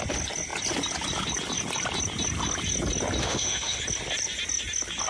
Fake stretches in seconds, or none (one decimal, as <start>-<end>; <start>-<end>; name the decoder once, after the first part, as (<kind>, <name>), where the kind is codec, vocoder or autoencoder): 3.2-3.8 (autoencoder, DAC-VAE)